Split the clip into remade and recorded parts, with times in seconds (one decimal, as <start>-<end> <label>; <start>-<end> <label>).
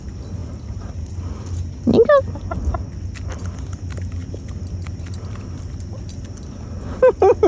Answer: 0.0-0.4 recorded; 0.4-1.1 remade; 1.1-7.5 recorded